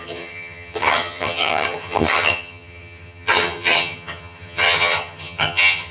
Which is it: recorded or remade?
remade